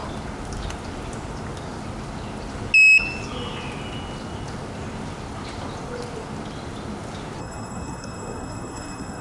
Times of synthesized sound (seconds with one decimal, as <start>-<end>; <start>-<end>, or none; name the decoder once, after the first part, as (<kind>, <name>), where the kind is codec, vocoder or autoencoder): 7.4-9.2 (codec, SNAC)